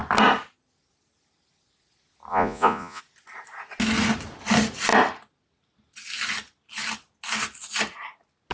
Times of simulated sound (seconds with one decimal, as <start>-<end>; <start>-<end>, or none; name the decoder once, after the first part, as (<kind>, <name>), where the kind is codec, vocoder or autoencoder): 2.3-3.0 (vocoder, Vocos)